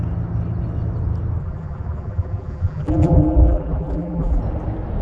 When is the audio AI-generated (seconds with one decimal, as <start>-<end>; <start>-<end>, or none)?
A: 1.4-4.4